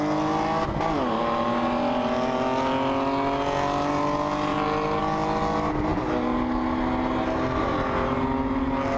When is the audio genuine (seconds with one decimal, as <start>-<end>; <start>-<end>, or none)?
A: 0.0-9.0